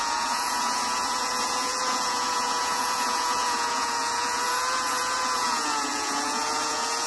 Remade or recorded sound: remade